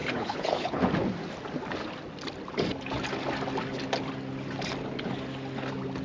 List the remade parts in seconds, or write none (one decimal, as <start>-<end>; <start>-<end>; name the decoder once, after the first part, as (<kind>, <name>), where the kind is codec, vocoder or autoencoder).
0.0-0.8 (codec, HILCodec)